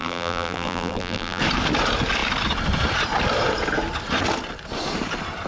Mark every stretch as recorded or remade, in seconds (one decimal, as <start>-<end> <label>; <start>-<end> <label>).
0.0-1.4 remade; 1.4-5.5 recorded